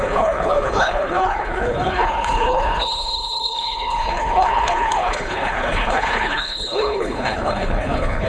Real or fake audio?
fake